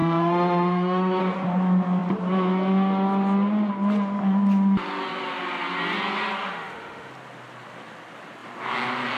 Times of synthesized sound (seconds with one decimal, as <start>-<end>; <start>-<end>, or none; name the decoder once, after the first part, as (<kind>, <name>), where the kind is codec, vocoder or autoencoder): 0.0-1.2 (autoencoder, DAC-VAE); 6.4-7.1